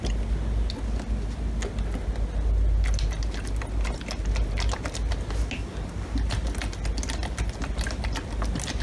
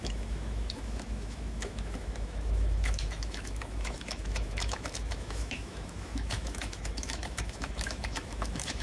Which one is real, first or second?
first